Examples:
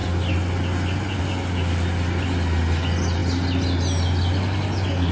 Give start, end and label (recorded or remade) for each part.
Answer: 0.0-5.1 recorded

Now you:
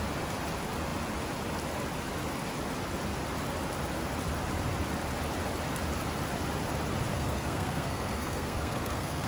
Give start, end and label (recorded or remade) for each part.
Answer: 0.0-7.1 recorded; 7.1-9.3 remade

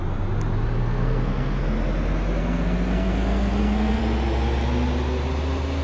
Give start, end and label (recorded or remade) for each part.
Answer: 0.0-0.8 recorded; 0.8-1.6 remade; 1.6-2.4 recorded; 2.4-4.0 remade; 4.0-5.8 recorded

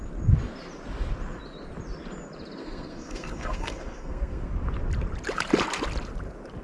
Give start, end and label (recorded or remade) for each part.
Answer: 0.0-2.6 recorded; 2.6-4.5 remade; 4.5-6.6 recorded

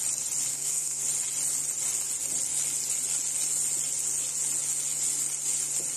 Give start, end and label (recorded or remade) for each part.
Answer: 0.0-0.5 recorded; 0.5-1.0 remade; 1.0-6.0 recorded